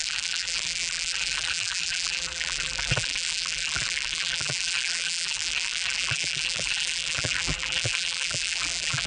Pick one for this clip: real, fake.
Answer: fake